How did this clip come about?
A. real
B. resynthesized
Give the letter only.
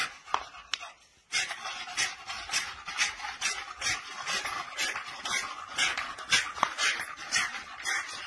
A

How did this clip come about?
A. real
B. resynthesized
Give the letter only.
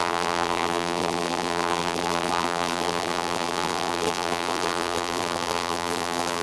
B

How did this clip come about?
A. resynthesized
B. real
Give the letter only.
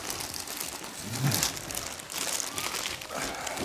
B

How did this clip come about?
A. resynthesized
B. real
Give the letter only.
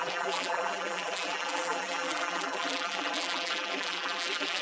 A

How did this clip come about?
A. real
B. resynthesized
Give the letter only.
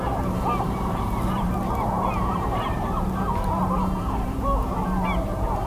B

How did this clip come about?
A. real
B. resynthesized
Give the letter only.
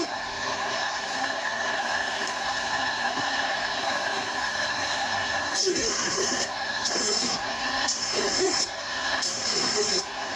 B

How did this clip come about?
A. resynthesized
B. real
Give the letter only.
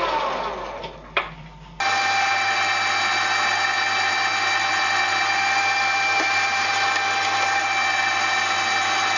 B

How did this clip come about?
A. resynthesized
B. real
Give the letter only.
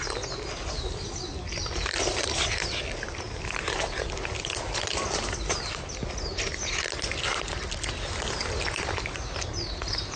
B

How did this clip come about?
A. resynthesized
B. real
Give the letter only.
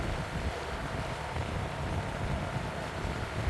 B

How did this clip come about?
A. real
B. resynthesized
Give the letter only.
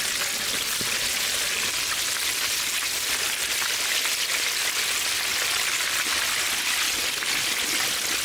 A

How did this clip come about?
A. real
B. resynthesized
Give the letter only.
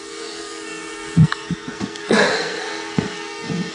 B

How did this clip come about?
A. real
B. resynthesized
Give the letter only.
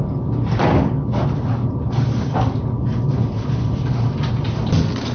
A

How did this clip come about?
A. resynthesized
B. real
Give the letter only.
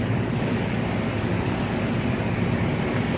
A